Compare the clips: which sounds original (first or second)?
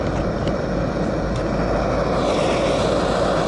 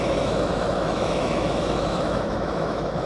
first